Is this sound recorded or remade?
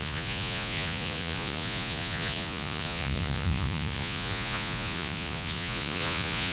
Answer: remade